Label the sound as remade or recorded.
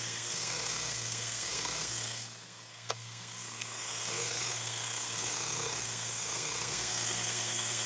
remade